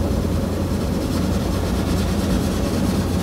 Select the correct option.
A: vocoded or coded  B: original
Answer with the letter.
B